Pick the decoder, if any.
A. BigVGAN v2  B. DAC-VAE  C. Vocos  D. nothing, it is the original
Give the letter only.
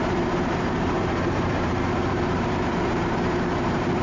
A